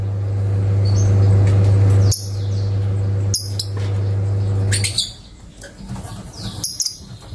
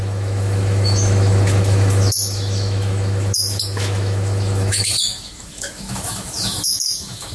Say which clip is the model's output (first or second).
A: second